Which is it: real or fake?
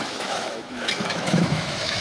fake